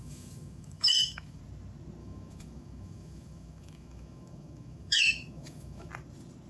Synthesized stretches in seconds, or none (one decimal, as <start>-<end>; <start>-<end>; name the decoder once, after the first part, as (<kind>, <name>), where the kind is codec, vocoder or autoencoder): 0.0-1.4 (autoencoder, DAC-VAE); 2.0-5.9